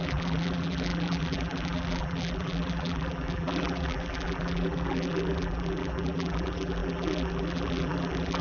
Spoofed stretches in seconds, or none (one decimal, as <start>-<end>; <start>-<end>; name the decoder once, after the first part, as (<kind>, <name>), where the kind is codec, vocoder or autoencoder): 0.0-8.4 (vocoder, BigVGAN v2)